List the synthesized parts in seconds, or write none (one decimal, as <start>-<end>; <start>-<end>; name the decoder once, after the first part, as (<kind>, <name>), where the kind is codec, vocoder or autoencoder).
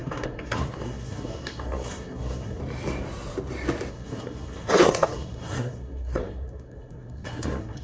0.0-2.6 (codec, SNAC); 3.9-7.8